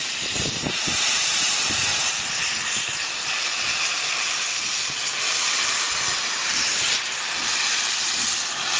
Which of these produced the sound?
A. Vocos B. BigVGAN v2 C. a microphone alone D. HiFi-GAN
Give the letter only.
B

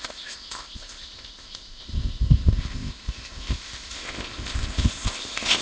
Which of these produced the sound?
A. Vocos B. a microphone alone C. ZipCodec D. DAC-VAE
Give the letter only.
C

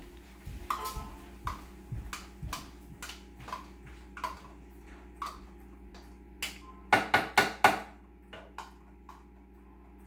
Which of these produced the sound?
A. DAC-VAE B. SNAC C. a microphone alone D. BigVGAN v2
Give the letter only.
C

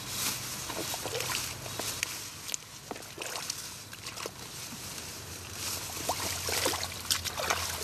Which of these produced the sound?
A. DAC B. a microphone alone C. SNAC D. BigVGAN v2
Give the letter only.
B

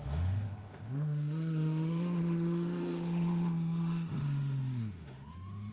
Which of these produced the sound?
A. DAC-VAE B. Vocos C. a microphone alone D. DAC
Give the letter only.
A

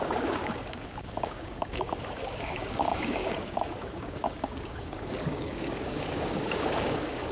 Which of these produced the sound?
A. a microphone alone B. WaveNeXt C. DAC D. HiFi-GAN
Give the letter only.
C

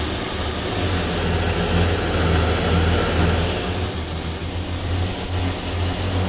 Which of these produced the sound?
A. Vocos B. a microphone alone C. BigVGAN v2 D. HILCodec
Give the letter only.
B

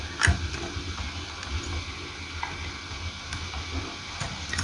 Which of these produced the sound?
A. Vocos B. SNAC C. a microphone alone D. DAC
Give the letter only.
C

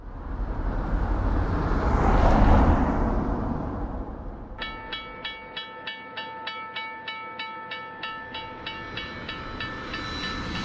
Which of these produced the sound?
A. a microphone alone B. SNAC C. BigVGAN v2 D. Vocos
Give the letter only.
A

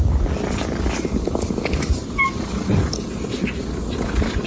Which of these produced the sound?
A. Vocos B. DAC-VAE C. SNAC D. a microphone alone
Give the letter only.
D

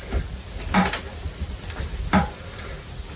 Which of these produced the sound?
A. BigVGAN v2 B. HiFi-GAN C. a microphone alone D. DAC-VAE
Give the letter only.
C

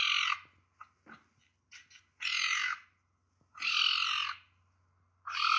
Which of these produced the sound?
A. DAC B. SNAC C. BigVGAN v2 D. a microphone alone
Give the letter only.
D